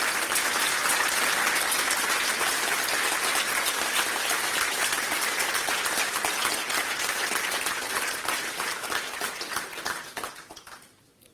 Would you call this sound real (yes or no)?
yes